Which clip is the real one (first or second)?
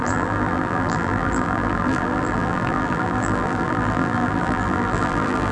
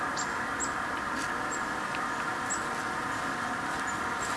second